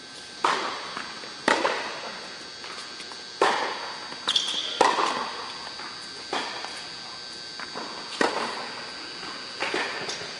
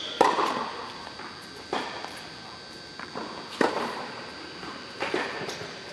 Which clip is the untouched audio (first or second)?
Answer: first